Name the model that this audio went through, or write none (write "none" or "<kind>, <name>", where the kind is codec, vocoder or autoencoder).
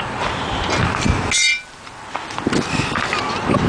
none